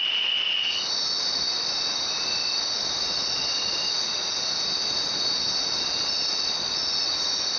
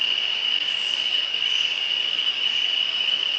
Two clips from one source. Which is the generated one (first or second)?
second